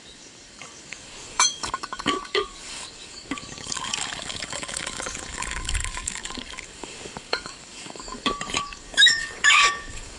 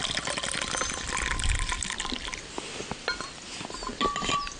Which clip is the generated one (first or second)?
first